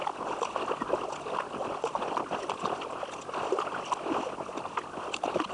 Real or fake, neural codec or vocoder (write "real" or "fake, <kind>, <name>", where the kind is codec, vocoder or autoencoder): real